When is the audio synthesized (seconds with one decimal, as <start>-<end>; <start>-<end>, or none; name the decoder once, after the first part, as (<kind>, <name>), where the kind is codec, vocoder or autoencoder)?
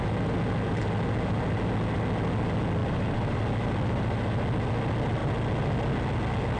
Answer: 2.8-3.4 (vocoder, BigVGAN v2)